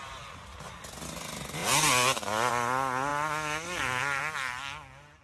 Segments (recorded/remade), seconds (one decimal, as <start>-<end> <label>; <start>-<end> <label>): 0.0-5.2 recorded